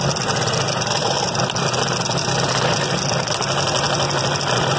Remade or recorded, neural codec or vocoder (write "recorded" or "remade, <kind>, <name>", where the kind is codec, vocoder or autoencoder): recorded